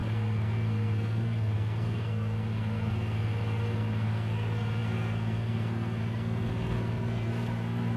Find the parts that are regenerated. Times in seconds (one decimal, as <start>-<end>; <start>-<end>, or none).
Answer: 0.0-8.0